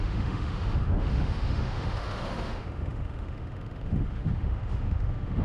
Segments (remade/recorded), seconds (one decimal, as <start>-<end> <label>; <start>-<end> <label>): 0.0-5.4 remade

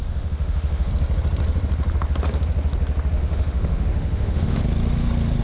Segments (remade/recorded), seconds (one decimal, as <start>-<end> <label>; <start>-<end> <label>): 0.0-0.9 remade; 0.9-3.2 recorded; 3.2-4.6 remade; 4.6-5.4 recorded

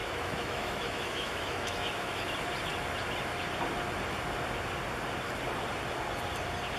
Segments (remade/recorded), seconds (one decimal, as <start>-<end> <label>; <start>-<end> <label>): 0.0-2.2 remade; 2.2-6.8 recorded

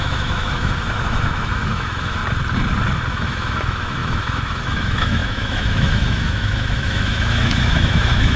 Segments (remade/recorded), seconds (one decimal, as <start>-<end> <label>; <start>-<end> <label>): 0.0-2.2 remade; 2.2-3.1 recorded; 3.1-8.4 remade

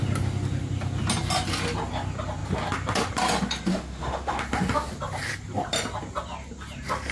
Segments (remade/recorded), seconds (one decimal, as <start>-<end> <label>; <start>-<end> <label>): 0.0-3.7 recorded; 3.7-4.4 remade; 4.4-7.1 recorded

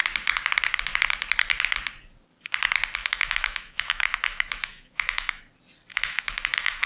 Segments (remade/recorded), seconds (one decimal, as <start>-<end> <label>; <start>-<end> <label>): 0.0-3.0 recorded; 3.0-5.4 remade; 5.4-5.9 recorded; 5.9-6.9 remade

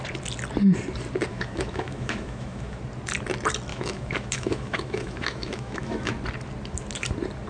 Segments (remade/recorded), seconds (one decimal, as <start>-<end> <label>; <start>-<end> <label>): 0.0-1.3 recorded; 1.3-2.8 remade; 2.8-3.7 recorded; 3.7-6.1 remade; 6.1-7.5 recorded

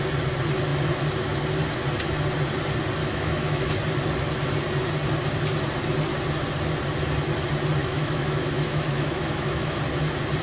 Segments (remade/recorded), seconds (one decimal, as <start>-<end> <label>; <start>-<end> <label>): 0.0-3.0 recorded; 3.0-3.7 remade; 3.7-7.8 recorded; 7.8-9.8 remade; 9.8-10.4 recorded